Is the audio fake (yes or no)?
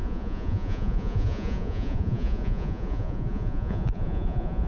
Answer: yes